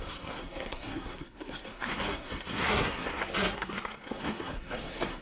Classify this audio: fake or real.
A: fake